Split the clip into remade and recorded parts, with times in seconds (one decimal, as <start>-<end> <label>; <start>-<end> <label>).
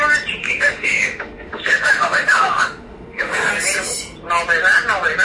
0.0-0.4 recorded; 0.4-3.5 remade; 3.5-5.2 recorded